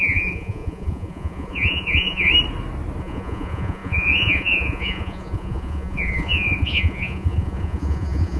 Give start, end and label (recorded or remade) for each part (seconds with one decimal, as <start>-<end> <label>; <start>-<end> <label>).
0.0-2.3 remade; 2.3-3.0 recorded; 3.0-8.4 remade